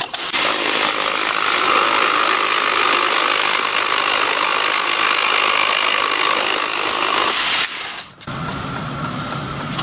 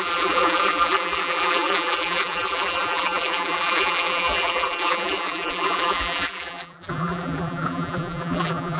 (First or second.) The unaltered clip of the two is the first